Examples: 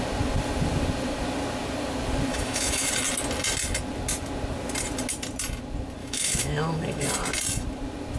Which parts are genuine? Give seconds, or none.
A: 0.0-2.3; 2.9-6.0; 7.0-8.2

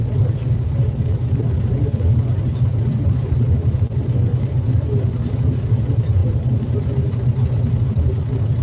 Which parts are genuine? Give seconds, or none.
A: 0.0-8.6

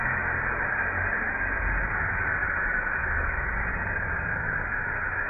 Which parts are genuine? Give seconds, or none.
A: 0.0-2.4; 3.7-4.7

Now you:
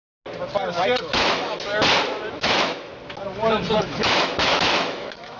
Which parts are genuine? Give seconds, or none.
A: 0.0-1.0; 1.7-2.3; 2.9-3.7